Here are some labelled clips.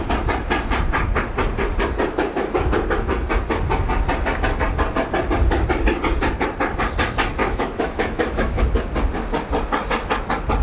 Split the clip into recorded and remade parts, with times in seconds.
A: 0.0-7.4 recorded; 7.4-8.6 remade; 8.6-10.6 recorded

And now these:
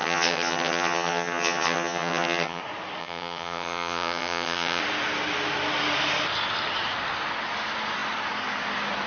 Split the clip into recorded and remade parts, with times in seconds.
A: 0.0-2.6 remade; 2.6-3.0 recorded; 3.0-4.8 remade; 4.8-9.1 recorded

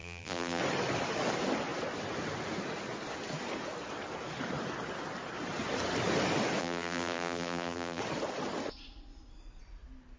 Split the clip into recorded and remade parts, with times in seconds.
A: 0.0-0.6 remade; 0.6-6.6 recorded; 6.6-8.0 remade; 8.0-10.2 recorded

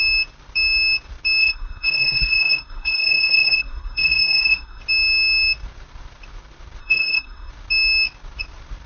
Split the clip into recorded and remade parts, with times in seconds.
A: 0.0-1.4 recorded; 1.4-4.8 remade; 4.8-6.8 recorded; 6.8-7.5 remade; 7.5-8.9 recorded

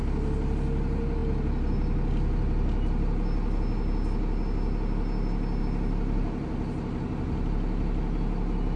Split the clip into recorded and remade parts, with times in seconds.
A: 0.0-8.8 recorded

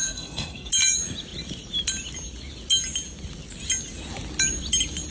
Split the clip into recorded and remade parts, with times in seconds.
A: 0.0-0.7 remade; 0.7-5.1 recorded